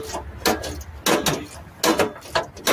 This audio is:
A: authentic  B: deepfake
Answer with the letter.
A